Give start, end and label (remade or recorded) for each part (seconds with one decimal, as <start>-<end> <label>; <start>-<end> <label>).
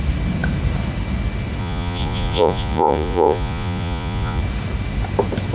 0.0-1.6 recorded; 1.6-4.4 remade; 4.4-5.5 recorded